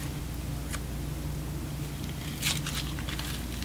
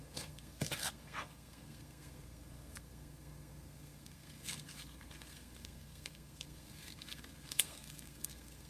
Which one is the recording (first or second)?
first